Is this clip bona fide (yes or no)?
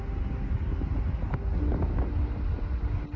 yes